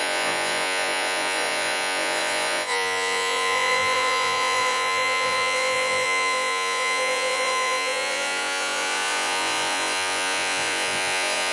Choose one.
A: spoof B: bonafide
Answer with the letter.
A